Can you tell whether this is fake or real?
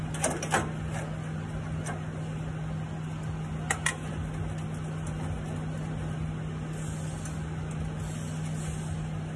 real